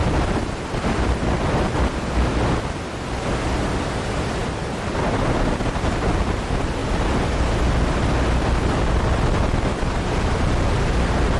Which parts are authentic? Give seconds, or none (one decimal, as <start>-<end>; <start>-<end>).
0.0-11.4